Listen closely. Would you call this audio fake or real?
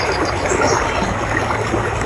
fake